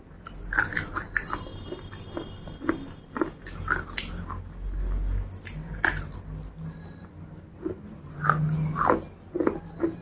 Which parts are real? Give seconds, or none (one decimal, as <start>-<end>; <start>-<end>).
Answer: 0.0-10.0